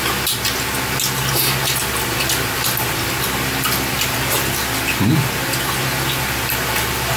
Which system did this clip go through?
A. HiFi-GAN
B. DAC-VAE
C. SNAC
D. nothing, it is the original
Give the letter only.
D